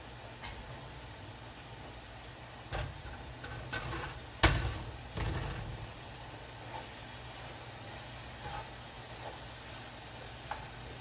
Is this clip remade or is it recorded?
recorded